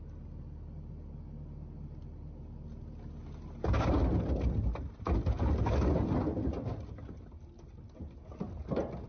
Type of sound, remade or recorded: recorded